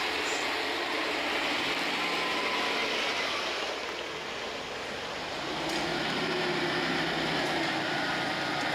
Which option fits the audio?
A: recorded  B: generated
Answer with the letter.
A